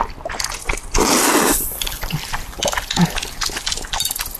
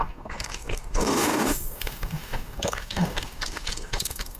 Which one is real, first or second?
first